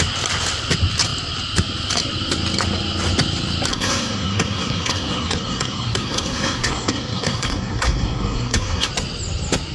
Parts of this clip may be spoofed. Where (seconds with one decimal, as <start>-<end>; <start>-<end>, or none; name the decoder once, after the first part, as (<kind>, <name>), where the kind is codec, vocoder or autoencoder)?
3.7-8.9 (codec, SNAC)